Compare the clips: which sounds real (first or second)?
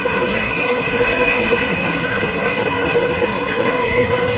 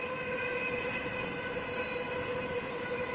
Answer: second